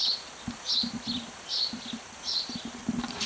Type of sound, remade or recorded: recorded